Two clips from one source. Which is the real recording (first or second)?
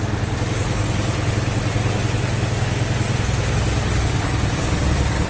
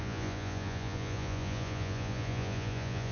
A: first